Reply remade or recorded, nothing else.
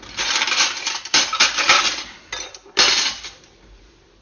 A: recorded